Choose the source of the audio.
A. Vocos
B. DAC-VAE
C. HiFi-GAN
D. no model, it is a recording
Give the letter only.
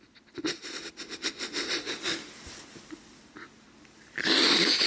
D